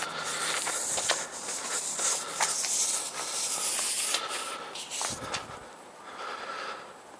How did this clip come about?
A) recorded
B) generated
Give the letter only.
A